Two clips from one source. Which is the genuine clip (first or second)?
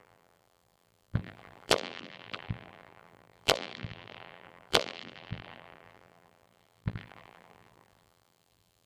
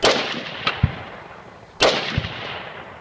second